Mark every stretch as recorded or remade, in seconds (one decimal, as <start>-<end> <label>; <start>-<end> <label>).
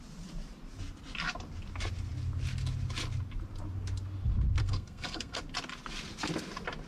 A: 0.0-4.6 recorded; 4.6-5.4 remade; 5.4-6.9 recorded